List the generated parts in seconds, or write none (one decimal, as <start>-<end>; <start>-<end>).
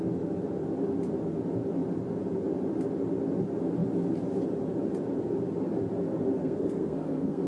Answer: 6.4-7.5